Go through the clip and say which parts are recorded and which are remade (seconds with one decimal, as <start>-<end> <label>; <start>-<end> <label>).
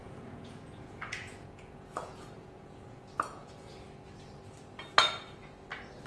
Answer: 0.0-3.7 remade; 3.7-6.1 recorded